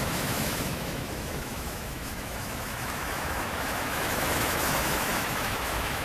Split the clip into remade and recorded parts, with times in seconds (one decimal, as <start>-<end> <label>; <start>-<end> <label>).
0.0-6.0 remade

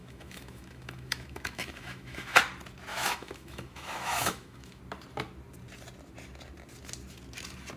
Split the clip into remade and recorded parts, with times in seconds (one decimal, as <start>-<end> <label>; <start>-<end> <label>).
0.0-2.4 remade; 2.4-2.9 recorded; 2.9-4.8 remade; 4.8-7.8 recorded

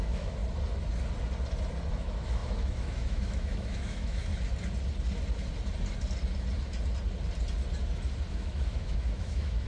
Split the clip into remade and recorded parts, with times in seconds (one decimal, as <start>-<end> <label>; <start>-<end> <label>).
0.0-0.4 remade; 0.4-1.9 recorded; 1.9-4.3 remade; 4.3-8.3 recorded; 8.3-9.7 remade

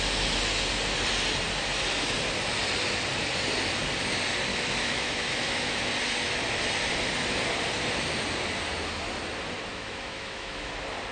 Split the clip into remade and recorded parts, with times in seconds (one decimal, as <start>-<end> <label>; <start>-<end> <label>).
0.0-4.5 recorded; 4.5-5.9 remade; 5.9-9.7 recorded; 9.7-10.7 remade; 10.7-11.1 recorded

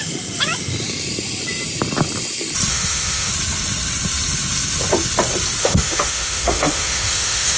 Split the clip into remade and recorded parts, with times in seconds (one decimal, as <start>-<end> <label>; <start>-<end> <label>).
0.0-2.7 recorded; 2.7-3.3 remade; 3.3-5.6 recorded; 5.6-7.6 remade

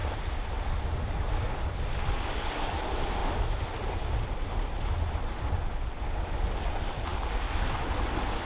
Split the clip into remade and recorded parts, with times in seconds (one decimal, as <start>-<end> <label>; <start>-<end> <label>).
0.0-8.5 recorded